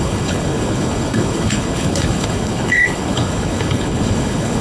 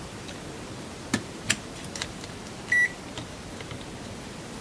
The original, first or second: second